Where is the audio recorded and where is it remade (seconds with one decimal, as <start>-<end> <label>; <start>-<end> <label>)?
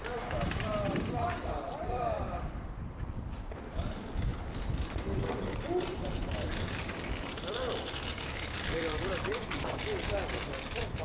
0.0-11.0 remade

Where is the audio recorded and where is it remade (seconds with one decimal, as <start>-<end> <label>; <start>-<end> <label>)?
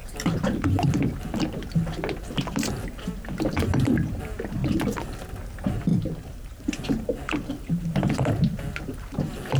0.0-1.3 remade; 1.3-4.6 recorded; 4.6-5.2 remade; 5.2-5.9 recorded; 5.9-6.9 remade; 6.9-9.6 recorded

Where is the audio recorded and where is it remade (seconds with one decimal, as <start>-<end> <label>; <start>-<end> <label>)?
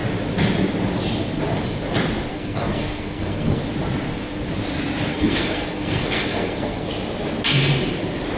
0.0-2.3 recorded; 2.3-3.6 remade; 3.6-5.1 recorded; 5.1-6.9 remade; 6.9-8.4 recorded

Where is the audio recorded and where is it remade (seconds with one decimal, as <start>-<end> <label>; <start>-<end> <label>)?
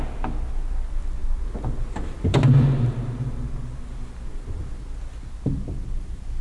0.0-6.4 recorded